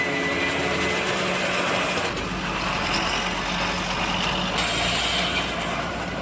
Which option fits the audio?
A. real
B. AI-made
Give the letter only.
A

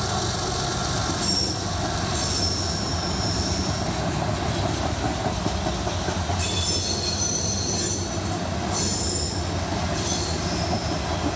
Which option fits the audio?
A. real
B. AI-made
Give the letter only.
A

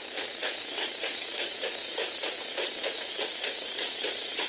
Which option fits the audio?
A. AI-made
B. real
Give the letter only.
A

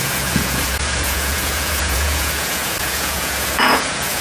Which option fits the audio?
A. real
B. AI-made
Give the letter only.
B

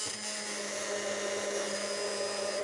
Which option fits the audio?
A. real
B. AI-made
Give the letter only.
A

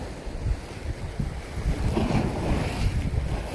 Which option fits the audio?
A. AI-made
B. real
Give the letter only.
B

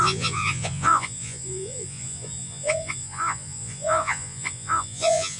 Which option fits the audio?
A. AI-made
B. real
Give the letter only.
A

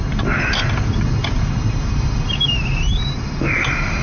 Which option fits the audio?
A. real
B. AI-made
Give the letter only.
A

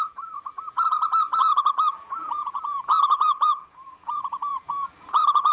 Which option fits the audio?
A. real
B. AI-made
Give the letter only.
B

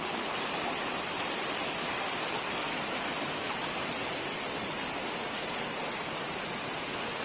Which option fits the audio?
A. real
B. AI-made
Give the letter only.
A